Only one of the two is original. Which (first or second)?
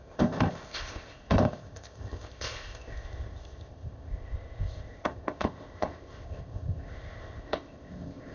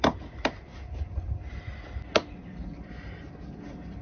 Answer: second